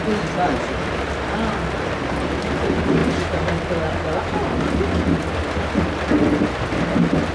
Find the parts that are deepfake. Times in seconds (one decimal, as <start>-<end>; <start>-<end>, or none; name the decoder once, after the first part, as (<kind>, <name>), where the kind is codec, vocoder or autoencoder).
none